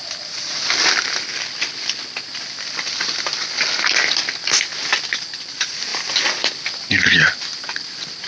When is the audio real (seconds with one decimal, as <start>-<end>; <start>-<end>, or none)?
1.3-4.4